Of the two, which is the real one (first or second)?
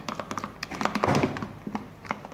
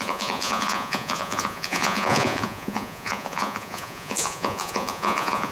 first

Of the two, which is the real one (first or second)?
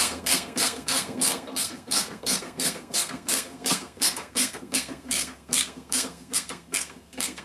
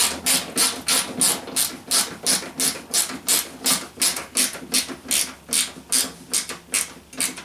second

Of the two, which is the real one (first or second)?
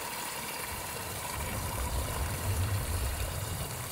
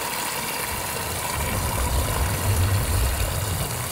second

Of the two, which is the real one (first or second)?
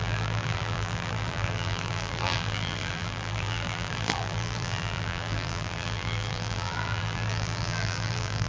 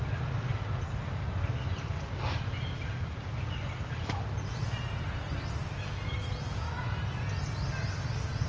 second